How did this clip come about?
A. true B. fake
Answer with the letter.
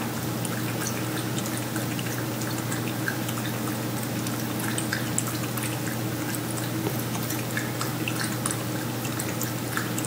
A